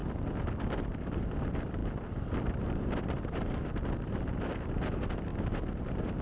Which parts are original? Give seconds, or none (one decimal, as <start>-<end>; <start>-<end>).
0.0-0.8; 1.8-2.6; 5.3-5.8